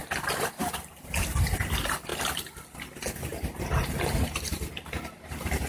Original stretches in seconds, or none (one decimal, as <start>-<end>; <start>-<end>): 0.0-3.3